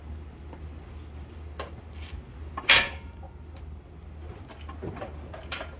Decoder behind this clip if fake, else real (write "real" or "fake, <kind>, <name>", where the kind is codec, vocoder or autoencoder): real